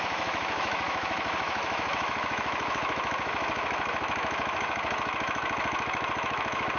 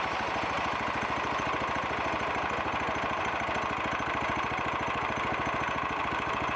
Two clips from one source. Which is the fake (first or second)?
first